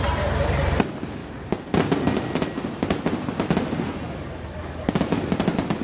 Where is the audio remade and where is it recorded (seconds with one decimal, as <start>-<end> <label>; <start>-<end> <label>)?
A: 0.0-5.8 recorded